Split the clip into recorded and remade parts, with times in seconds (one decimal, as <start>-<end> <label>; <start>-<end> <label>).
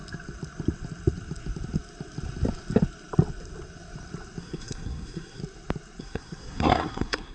0.0-4.4 recorded; 4.4-5.4 remade; 5.4-6.0 recorded; 6.0-7.3 remade